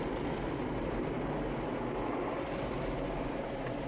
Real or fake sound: real